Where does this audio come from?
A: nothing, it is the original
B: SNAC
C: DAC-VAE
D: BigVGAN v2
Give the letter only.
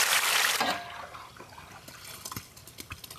A